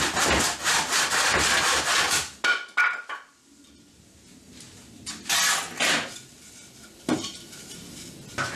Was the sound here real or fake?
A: real